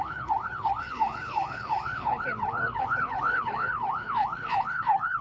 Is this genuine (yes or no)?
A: no